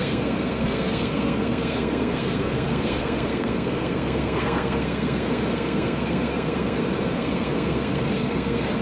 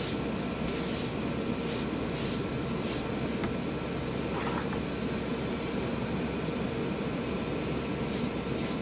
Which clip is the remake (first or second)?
first